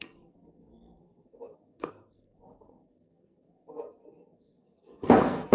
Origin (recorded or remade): remade